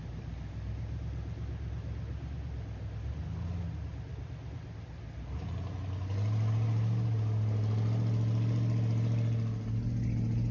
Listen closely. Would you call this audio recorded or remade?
recorded